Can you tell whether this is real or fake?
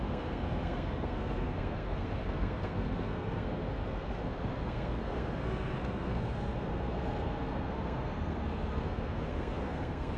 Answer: fake